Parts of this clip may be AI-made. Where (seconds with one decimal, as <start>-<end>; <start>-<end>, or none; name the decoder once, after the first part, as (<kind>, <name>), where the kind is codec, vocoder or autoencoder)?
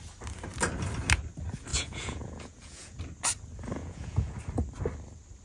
1.7-3.0 (vocoder, Vocos); 3.8-4.4